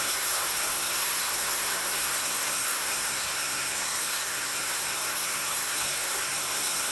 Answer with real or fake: fake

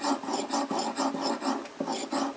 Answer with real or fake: real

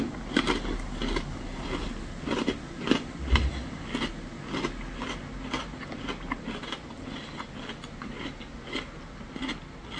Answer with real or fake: real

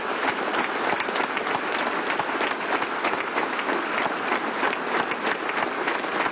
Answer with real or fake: real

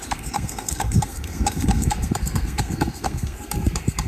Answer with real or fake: fake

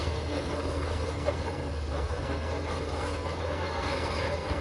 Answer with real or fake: fake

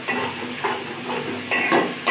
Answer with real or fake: real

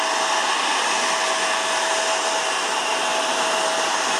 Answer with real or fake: real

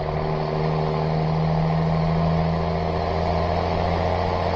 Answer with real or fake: real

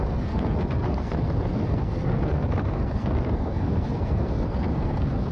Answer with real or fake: fake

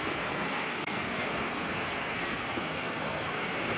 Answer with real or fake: fake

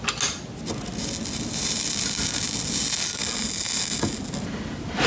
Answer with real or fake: real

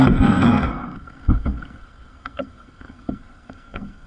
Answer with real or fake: fake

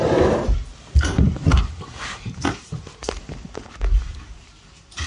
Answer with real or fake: real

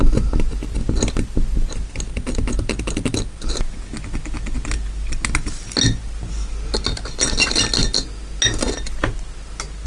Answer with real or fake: real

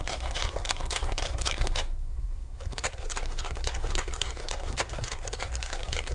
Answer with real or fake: fake